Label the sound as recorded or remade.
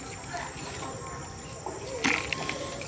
recorded